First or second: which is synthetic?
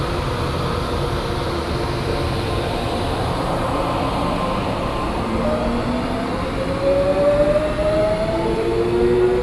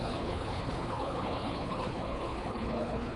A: second